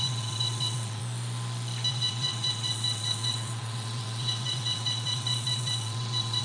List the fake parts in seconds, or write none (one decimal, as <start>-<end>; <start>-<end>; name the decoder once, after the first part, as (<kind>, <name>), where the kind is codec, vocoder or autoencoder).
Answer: 0.0-1.0 (vocoder, WaveNeXt); 1.9-6.4